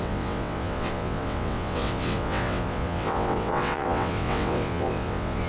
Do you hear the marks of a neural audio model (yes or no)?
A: yes